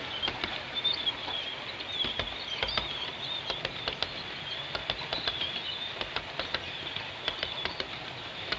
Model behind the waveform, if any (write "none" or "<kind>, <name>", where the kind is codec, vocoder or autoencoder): none